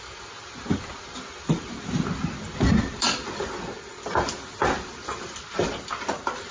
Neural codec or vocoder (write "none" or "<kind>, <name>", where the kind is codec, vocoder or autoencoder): none